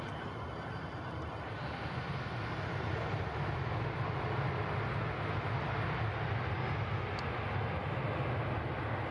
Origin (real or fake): real